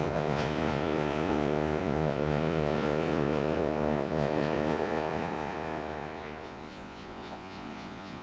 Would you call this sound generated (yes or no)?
yes